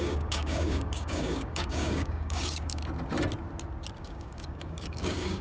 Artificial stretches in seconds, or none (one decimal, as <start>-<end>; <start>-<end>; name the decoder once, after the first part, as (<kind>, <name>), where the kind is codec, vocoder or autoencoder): 0.0-2.8 (codec, DAC); 4.0-5.4